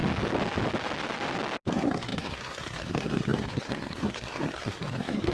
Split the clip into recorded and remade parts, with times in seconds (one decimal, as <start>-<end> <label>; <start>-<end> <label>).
0.0-1.7 recorded; 1.7-5.3 remade